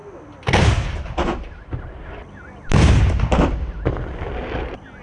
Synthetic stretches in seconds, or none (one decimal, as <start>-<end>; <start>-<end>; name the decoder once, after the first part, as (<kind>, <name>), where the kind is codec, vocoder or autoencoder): none